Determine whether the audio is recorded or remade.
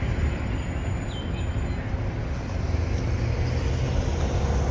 recorded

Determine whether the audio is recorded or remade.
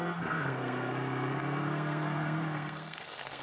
remade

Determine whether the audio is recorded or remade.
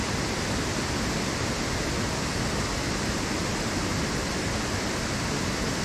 recorded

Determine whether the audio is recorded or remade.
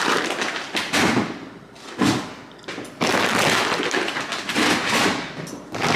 recorded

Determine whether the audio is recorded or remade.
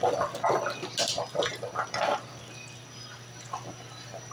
recorded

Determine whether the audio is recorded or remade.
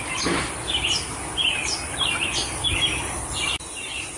recorded